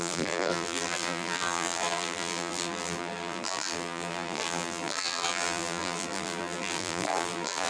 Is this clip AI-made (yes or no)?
yes